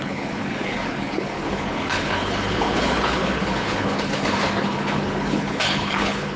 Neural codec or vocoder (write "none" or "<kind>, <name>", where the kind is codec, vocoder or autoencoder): codec, HILCodec